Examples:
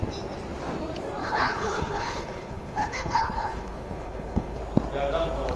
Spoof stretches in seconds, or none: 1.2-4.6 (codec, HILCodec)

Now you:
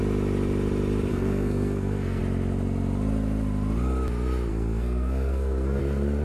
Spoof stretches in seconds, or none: 1.1-2.2 (codec, SNAC); 4.5-5.8

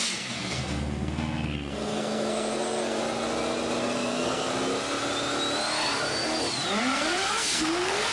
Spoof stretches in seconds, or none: 0.0-3.0 (codec, SNAC); 3.8-4.5; 6.8-8.1

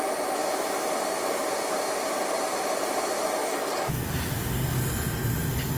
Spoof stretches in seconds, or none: 3.4-4.0 (codec, DAC)

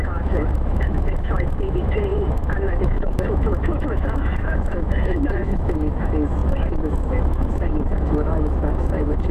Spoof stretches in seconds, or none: 0.0-9.3 (autoencoder, DAC-VAE)